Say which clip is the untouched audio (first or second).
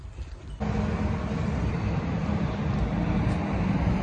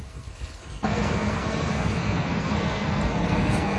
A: first